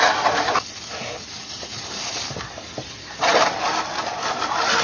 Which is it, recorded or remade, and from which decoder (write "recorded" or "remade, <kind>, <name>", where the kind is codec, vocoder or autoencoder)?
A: remade, vocoder, BigVGAN v2